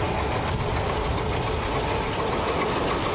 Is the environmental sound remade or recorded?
recorded